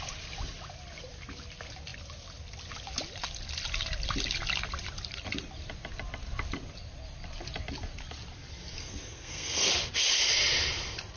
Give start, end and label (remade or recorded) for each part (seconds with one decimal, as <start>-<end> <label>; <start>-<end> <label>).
0.0-8.8 recorded; 8.8-9.7 remade; 9.7-11.2 recorded